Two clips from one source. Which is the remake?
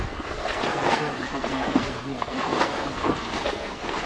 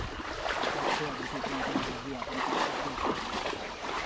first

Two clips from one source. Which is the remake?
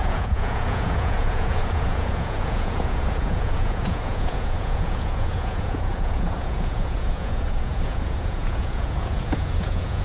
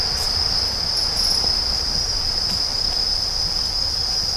first